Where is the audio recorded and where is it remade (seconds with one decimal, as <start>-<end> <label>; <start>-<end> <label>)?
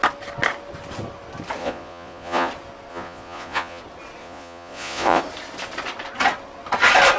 0.0-1.6 recorded; 1.6-2.5 remade; 2.5-2.9 recorded; 2.9-3.8 remade; 3.8-4.2 recorded; 4.2-5.2 remade; 5.2-7.2 recorded